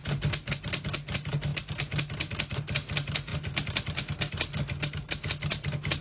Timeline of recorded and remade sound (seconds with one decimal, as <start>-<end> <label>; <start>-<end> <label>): 0.0-6.0 recorded

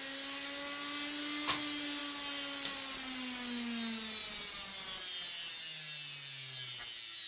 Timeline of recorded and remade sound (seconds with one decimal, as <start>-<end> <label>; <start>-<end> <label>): 0.0-7.3 recorded

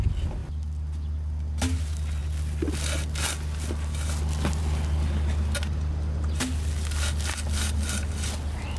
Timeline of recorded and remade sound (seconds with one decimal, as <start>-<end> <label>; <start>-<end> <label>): 0.0-8.8 recorded

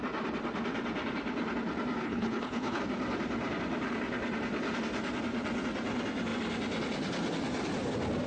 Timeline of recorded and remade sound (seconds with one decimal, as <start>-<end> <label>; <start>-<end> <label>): 0.0-2.0 recorded; 2.0-2.8 remade; 2.8-8.3 recorded

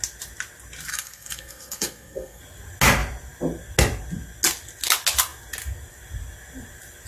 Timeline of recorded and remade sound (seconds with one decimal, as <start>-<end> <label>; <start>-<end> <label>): 0.0-0.9 recorded; 0.9-2.4 remade; 2.4-7.1 recorded

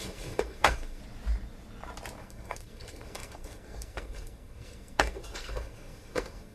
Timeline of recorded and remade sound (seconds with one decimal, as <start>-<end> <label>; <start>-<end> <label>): 0.0-1.0 remade; 1.0-2.2 recorded; 2.2-6.5 remade

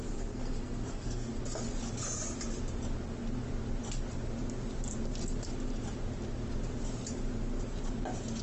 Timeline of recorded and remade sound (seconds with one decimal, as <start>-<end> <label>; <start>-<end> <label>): 0.0-1.4 remade; 1.4-8.4 recorded